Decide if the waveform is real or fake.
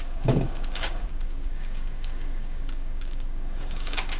fake